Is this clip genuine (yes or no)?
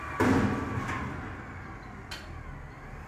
yes